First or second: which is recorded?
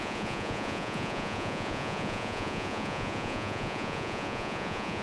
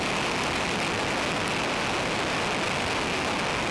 second